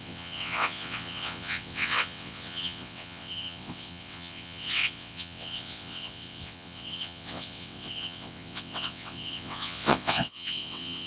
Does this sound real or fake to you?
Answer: fake